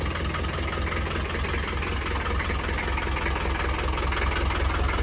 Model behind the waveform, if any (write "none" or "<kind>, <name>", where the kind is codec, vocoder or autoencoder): none